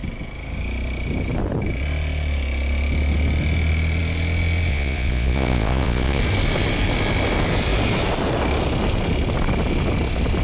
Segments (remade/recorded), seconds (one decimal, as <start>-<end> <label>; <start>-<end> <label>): 0.0-4.7 recorded; 4.7-6.2 remade; 6.2-10.4 recorded